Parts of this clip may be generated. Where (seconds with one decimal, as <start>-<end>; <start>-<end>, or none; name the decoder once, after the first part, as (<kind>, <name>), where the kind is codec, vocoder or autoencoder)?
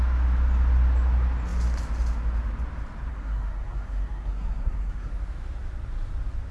3.1-5.1 (codec, SNAC)